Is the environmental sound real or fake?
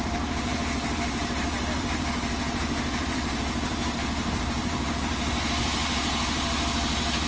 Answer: fake